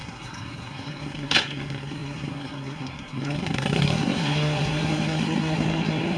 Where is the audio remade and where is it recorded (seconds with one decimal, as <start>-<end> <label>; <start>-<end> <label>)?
0.0-6.2 remade